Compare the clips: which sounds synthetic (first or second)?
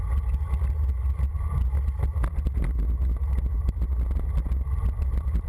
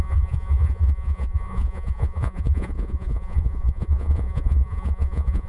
second